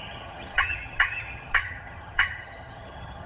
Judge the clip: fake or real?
fake